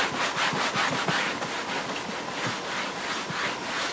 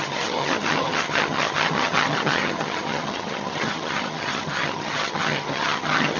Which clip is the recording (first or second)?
first